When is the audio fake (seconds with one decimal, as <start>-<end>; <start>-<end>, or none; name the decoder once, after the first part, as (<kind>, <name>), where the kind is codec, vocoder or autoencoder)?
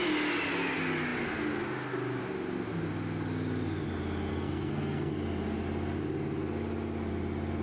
4.3-5.1 (codec, SNAC)